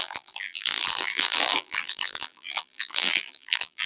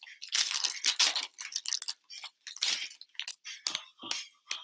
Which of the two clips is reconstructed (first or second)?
first